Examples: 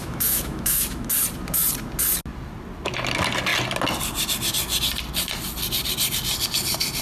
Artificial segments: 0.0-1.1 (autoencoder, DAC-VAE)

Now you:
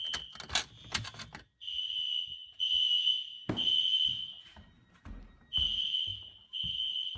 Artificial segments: none

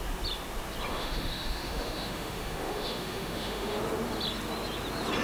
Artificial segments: 0.9-3.8 (autoencoder, DAC-VAE)

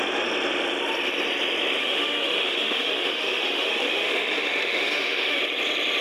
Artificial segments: 1.8-5.4 (autoencoder, DAC-VAE)

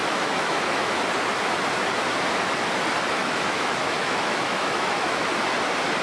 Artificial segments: 0.0-1.0 (autoencoder, DAC-VAE); 3.2-5.3

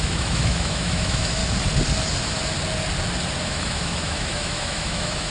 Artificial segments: 0.0-1.4 (autoencoder, DAC-VAE); 3.4-5.3

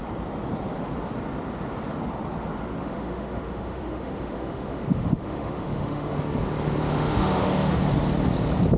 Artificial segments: 2.8-6.2 (autoencoder, DAC-VAE); 6.9-7.7